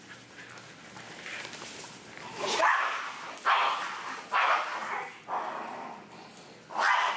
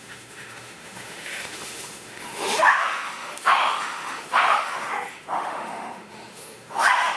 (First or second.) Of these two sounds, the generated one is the second